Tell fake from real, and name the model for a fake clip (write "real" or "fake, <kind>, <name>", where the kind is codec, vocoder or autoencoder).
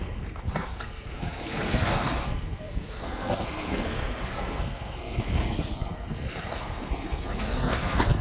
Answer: fake, codec, SNAC